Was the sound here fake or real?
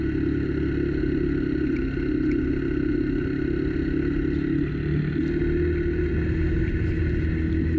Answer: real